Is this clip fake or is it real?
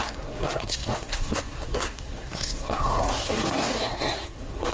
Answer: fake